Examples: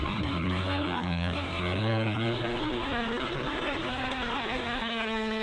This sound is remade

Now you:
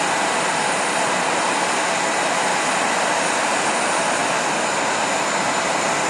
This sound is recorded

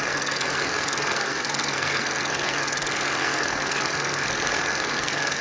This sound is remade